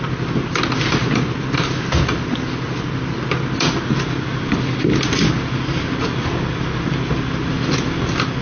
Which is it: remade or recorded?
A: recorded